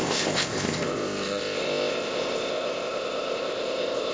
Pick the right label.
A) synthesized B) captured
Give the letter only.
A